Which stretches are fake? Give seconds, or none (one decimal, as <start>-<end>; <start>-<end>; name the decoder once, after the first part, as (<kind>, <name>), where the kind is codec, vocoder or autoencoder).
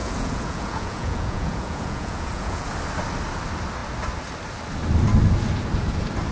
0.0-2.7 (vocoder, Vocos)